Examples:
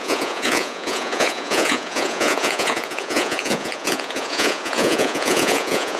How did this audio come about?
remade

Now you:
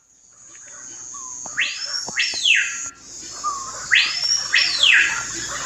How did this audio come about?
recorded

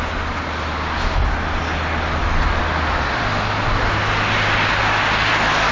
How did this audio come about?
recorded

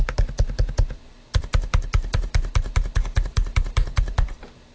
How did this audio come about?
remade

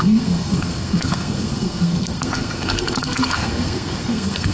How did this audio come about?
remade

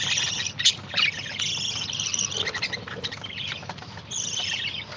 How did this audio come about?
recorded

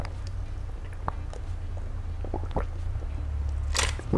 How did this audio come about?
recorded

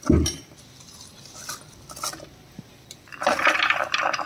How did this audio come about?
recorded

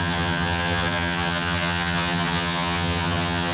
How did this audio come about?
remade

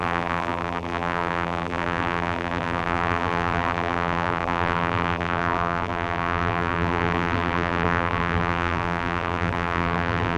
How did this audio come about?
remade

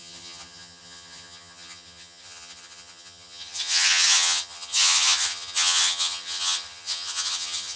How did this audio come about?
remade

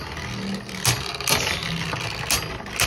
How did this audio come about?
recorded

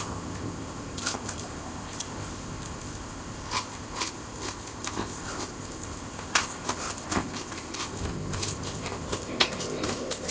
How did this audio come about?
remade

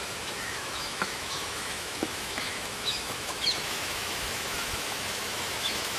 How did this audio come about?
remade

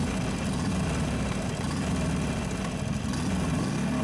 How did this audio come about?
recorded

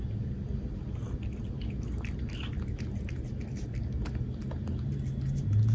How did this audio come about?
recorded